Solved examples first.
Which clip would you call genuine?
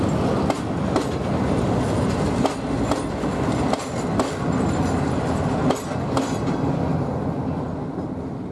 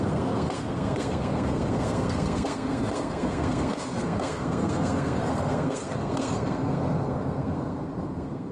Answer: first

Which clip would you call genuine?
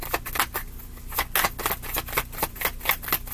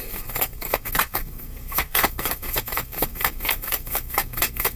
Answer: first